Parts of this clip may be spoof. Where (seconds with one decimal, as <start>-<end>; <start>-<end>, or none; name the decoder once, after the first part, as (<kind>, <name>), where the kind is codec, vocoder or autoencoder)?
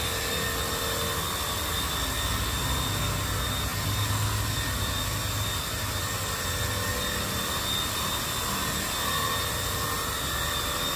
none